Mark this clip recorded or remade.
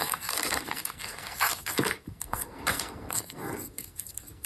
remade